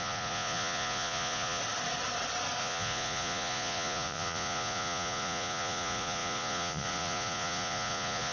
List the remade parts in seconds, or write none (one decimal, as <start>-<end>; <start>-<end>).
0.0-1.6; 2.6-8.3

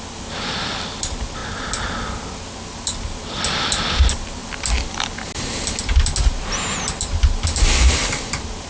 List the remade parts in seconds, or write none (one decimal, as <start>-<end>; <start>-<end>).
none

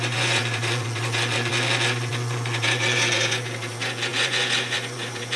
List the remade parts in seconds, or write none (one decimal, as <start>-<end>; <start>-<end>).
0.0-1.5; 2.1-5.4